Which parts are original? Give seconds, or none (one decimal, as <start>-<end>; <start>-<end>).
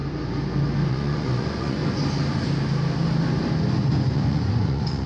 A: 0.0-0.9; 1.8-3.8